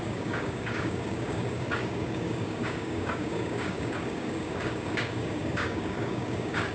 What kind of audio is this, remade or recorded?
remade